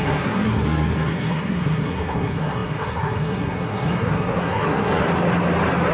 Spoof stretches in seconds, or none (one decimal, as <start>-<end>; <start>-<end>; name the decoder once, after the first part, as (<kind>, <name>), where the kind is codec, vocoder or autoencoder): 0.0-5.0 (codec, SNAC)